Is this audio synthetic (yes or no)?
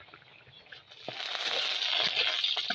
no